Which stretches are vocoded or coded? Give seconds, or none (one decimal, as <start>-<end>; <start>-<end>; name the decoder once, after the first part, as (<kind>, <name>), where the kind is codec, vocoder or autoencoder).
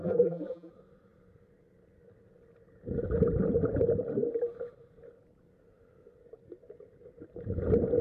0.0-0.7 (vocoder, BigVGAN v2)